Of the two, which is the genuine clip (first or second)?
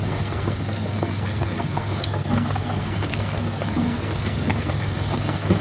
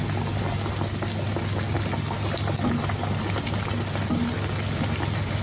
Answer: second